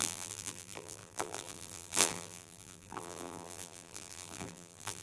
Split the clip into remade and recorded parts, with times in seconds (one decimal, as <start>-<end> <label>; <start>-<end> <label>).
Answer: 0.0-5.0 remade